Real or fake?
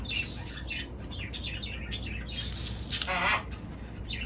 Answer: real